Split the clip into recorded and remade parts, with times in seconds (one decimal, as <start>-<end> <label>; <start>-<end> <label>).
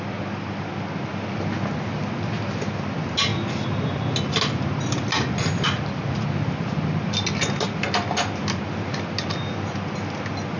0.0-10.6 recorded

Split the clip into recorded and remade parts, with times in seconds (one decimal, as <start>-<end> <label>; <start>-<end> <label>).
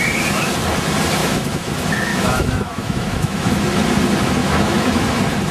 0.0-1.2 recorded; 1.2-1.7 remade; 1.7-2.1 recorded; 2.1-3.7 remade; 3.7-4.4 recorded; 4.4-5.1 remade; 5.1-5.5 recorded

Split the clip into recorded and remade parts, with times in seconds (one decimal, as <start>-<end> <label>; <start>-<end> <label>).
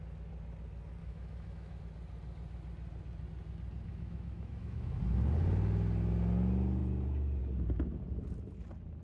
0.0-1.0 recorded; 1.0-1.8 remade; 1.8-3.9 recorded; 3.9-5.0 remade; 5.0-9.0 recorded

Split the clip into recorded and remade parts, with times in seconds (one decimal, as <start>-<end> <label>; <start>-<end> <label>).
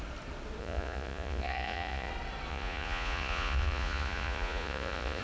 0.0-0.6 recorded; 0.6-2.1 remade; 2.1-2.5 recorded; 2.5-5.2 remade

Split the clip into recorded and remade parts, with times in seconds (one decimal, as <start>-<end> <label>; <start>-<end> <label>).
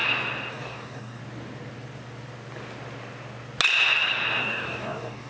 0.0-0.5 recorded; 0.5-1.2 remade; 1.2-4.4 recorded; 4.4-5.3 remade